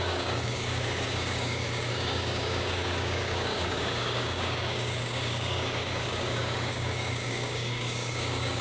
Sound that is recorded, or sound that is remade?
remade